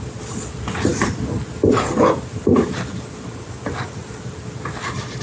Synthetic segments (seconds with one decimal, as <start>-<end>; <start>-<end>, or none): none